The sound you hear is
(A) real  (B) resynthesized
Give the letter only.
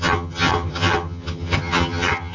B